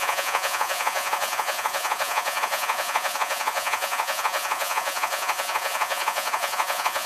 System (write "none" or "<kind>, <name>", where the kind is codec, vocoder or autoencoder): vocoder, Vocos